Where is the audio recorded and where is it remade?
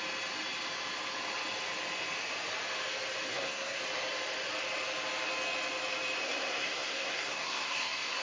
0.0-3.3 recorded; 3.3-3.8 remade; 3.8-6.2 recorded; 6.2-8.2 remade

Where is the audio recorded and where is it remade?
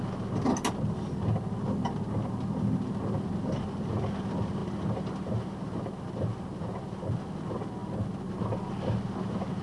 0.0-9.6 recorded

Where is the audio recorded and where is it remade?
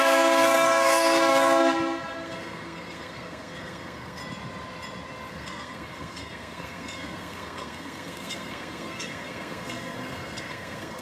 0.0-4.2 remade; 4.2-5.3 recorded; 5.3-11.0 remade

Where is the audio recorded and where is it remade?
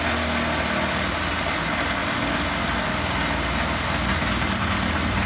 0.0-5.3 recorded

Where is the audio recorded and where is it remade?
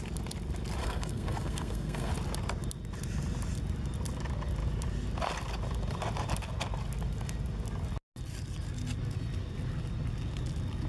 0.0-0.8 recorded; 0.8-2.1 remade; 2.1-10.9 recorded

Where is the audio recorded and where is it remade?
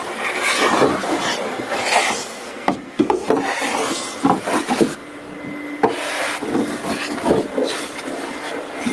0.0-2.2 recorded; 2.2-3.3 remade; 3.3-8.9 recorded